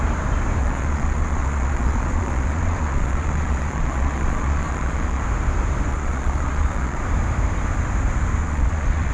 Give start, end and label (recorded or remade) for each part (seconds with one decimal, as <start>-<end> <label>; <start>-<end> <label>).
0.0-0.6 recorded; 0.6-5.2 remade; 5.2-5.9 recorded; 5.9-7.0 remade; 7.0-8.4 recorded; 8.4-9.1 remade